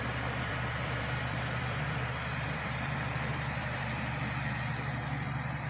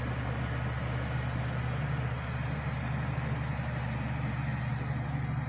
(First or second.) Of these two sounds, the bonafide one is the second